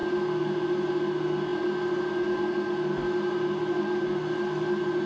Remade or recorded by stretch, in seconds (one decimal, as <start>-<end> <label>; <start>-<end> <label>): 0.0-5.1 recorded